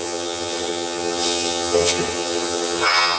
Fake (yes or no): yes